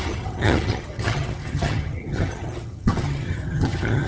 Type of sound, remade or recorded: remade